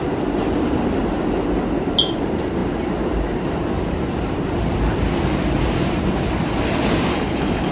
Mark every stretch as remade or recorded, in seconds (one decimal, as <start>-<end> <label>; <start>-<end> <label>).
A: 0.0-7.1 recorded; 7.1-7.7 remade